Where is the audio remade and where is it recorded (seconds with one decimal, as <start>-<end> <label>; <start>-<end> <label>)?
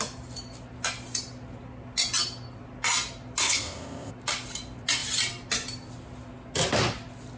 0.0-3.4 recorded; 3.4-4.1 remade; 4.1-7.4 recorded